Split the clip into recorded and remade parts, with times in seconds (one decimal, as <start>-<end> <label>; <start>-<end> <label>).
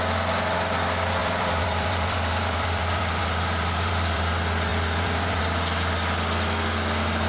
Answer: 0.0-1.2 recorded; 1.2-4.3 remade; 4.3-4.7 recorded; 4.7-5.4 remade; 5.4-7.3 recorded